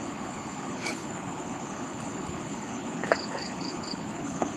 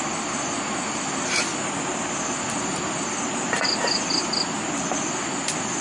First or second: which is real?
second